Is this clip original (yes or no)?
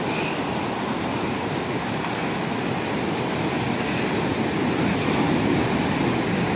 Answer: yes